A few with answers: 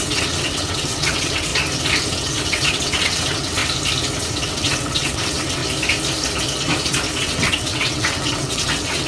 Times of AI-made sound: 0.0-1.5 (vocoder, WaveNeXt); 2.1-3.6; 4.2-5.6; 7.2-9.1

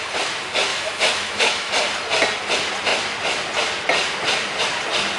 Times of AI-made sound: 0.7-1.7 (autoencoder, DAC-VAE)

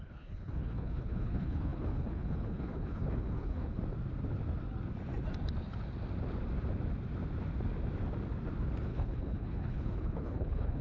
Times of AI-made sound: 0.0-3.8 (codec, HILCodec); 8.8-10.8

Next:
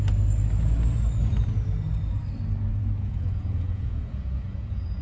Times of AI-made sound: 2.7-5.0 (vocoder, Vocos)